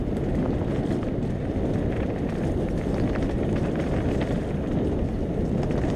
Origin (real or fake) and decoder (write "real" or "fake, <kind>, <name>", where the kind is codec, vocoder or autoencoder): real